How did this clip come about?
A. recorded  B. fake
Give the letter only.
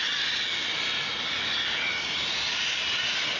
A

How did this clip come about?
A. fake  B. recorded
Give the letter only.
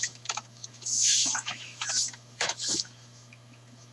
A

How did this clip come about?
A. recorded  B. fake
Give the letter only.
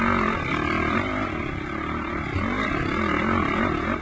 A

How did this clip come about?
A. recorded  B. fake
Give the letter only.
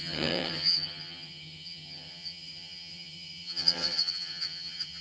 B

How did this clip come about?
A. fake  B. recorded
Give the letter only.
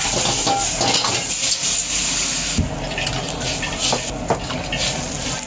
B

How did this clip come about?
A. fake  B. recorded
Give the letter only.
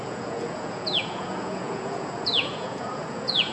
A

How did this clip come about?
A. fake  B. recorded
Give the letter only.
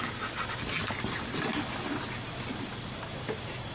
B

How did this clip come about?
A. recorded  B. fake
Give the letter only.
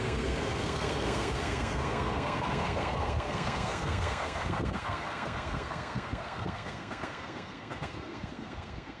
B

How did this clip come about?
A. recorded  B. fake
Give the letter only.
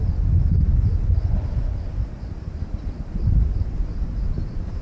A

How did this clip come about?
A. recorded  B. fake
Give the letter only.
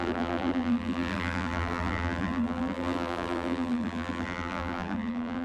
B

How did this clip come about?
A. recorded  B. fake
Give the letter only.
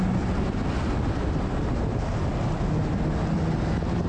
A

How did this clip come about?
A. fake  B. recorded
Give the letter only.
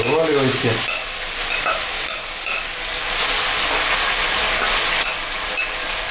B